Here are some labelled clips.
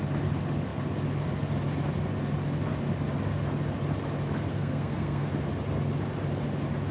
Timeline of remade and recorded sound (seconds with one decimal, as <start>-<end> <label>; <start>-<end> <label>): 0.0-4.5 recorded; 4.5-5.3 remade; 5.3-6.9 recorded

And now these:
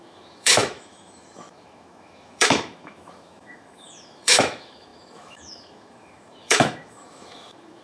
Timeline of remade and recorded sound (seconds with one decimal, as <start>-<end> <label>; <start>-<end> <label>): 0.0-7.8 remade

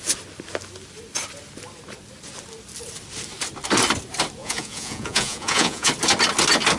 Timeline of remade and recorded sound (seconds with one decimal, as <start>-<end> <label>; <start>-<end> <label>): 0.0-4.4 recorded; 4.4-5.9 remade; 5.9-6.8 recorded

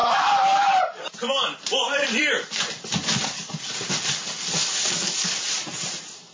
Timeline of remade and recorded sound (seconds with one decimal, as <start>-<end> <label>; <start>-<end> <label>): 0.0-0.8 remade; 0.8-1.8 recorded; 1.8-2.5 remade; 2.5-3.2 recorded; 3.2-4.7 remade; 4.7-6.3 recorded

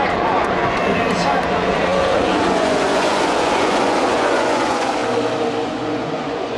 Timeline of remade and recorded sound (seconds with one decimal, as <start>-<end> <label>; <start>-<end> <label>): 0.0-0.8 remade; 0.8-1.5 recorded; 1.5-5.0 remade; 5.0-5.6 recorded; 5.6-6.6 remade